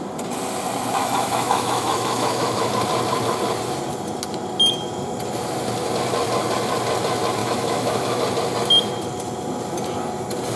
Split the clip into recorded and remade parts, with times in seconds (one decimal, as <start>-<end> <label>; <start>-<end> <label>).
0.0-1.0 recorded; 1.0-2.7 remade; 2.7-7.4 recorded; 7.4-8.2 remade; 8.2-10.6 recorded